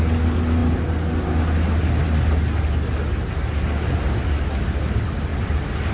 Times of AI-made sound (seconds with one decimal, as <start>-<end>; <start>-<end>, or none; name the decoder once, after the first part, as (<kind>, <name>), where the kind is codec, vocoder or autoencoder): none